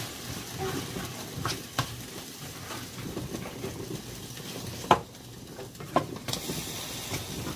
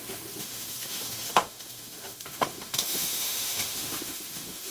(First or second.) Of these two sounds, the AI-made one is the second